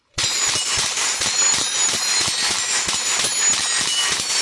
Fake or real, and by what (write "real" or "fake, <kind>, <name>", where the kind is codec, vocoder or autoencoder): fake, vocoder, BigVGAN v2